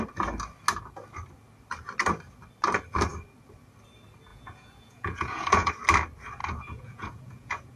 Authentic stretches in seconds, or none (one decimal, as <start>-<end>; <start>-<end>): 0.0-4.3; 5.7-6.4

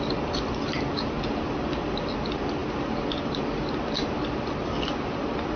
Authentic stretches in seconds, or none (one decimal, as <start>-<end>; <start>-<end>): 0.0-5.6

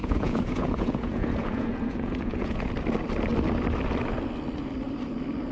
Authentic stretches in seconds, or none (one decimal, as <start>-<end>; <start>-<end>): 2.7-5.5

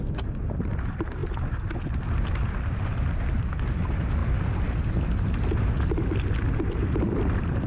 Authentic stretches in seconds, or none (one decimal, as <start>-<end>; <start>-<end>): 0.0-7.7

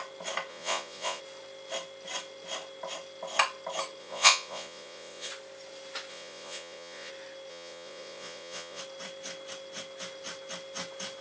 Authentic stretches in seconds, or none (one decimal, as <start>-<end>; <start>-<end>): 0.0-0.5; 1.2-4.0; 5.3-6.1; 7.1-7.5; 8.8-11.2

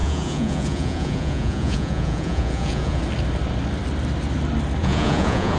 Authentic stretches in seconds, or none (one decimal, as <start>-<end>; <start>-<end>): 3.0-4.8

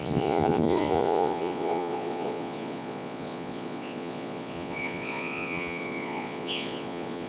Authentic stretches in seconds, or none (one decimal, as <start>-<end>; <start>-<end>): none